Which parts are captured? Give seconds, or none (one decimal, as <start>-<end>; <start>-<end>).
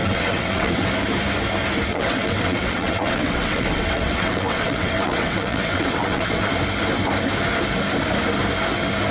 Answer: 0.9-1.9; 6.5-9.1